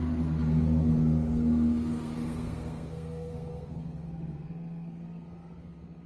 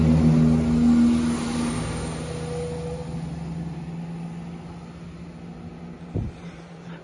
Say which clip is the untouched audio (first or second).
second